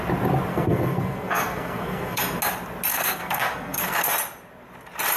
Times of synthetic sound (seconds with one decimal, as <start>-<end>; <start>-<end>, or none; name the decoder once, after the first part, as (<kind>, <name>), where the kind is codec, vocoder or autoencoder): 0.5-2.2 (codec, SNAC); 2.9-4.1